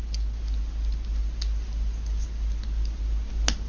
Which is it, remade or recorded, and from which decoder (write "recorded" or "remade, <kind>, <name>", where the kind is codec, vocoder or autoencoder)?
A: recorded